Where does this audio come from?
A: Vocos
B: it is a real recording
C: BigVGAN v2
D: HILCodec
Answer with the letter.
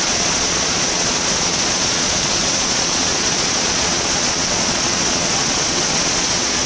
A